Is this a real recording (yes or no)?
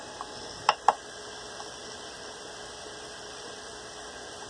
yes